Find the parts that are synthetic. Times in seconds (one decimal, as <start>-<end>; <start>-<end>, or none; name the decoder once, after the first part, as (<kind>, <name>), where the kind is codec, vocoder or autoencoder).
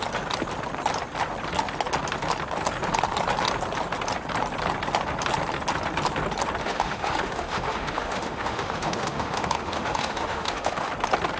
6.6-10.9 (autoencoder, DAC-VAE)